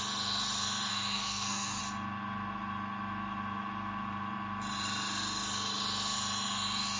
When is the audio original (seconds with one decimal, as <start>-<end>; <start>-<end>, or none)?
0.0-0.9; 1.8-7.0